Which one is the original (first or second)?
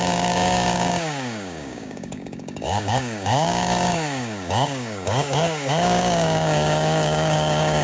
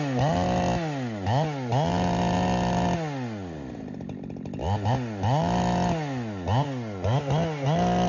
second